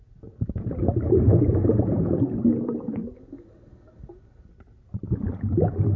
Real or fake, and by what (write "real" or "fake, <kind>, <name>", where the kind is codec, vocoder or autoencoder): real